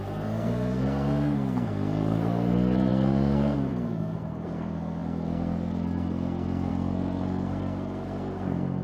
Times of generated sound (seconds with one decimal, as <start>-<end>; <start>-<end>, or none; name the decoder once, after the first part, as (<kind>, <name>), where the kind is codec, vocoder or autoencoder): 0.0-8.8 (codec, SNAC)

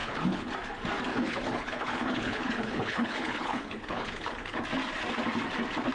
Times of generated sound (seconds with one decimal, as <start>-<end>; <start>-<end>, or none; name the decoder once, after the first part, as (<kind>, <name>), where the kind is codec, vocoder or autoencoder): 0.0-0.5 (codec, HILCodec); 1.1-4.6

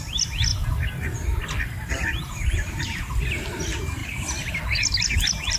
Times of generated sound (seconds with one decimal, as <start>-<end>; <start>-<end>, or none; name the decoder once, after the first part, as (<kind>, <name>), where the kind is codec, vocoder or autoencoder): 4.0-4.6 (vocoder, BigVGAN v2)

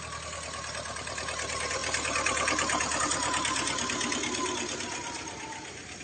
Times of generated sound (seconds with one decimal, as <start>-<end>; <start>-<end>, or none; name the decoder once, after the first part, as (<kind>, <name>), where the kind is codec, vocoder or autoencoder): none

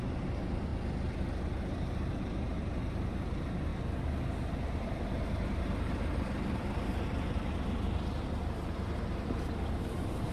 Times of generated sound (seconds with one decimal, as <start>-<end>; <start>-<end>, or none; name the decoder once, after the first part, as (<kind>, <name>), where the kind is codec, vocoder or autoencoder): 0.0-0.7 (vocoder, BigVGAN v2); 1.7-3.7; 4.7-10.3